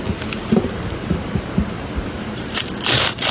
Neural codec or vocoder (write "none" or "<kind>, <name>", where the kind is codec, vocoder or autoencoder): vocoder, BigVGAN v2